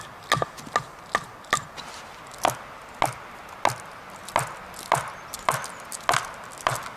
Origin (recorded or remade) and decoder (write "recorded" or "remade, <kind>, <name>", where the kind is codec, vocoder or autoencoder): recorded